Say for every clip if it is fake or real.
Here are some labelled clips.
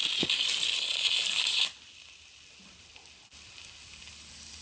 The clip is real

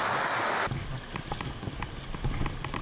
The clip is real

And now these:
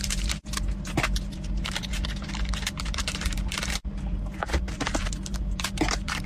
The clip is fake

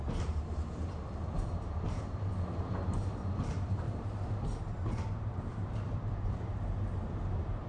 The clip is fake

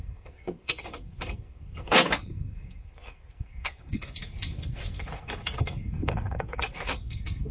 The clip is fake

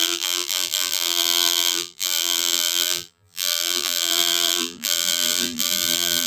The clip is fake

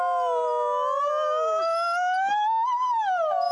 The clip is real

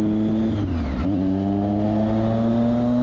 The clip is real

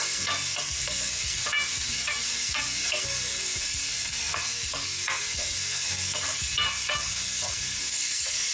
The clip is fake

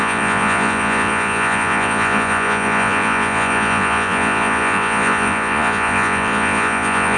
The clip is fake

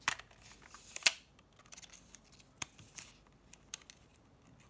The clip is real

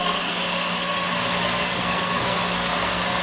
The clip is fake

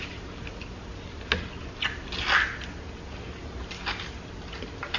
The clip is real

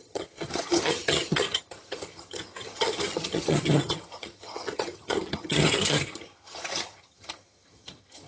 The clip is fake